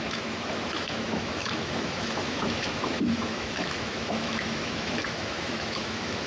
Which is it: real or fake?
fake